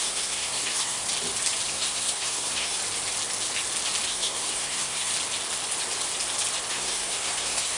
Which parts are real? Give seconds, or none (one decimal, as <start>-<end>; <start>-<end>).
1.0-1.7; 2.8-4.1; 5.1-6.7